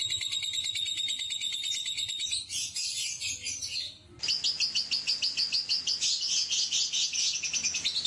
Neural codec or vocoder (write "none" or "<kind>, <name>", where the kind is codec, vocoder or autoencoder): none